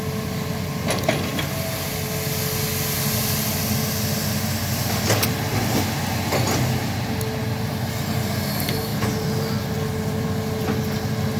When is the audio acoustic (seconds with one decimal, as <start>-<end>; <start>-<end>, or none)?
0.0-8.9; 10.3-11.4